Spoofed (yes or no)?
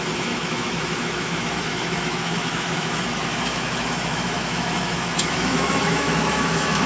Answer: yes